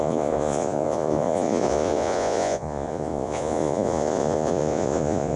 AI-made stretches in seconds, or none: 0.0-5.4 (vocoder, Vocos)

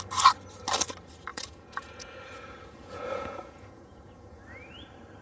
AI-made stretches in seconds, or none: 1.3-4.4 (vocoder, Vocos)